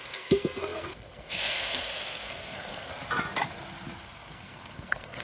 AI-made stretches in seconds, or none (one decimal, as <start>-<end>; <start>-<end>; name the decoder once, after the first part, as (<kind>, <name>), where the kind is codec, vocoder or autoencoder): 0.0-2.9 (codec, SNAC); 4.0-5.2